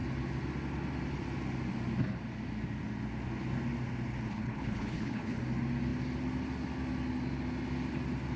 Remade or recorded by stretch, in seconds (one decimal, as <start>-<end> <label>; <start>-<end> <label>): 0.0-4.3 recorded; 4.3-5.4 remade; 5.4-8.4 recorded